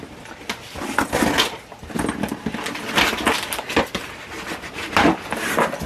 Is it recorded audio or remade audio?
recorded